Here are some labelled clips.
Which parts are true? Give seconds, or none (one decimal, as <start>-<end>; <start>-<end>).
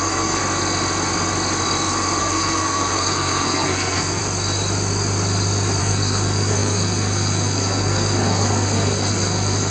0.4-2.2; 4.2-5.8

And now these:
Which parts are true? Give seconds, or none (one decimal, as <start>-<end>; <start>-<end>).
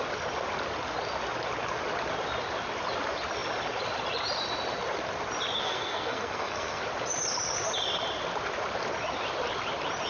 0.0-5.6; 6.8-10.1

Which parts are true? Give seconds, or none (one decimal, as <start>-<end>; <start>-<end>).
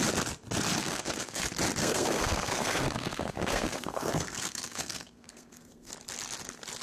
0.0-0.8; 1.4-1.8; 5.9-6.8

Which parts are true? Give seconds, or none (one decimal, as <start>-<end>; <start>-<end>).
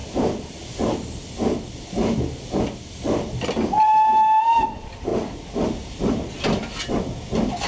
0.0-7.7